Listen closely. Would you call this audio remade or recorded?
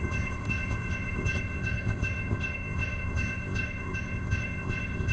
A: remade